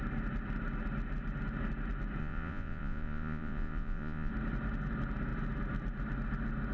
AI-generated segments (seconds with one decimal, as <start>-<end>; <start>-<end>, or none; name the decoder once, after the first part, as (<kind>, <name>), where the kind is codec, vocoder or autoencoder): 2.2-4.3 (vocoder, Vocos)